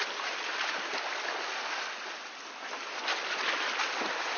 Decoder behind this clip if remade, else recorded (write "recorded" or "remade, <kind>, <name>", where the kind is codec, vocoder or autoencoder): recorded